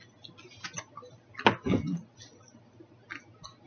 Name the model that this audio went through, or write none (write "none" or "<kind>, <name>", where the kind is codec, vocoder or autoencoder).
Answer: none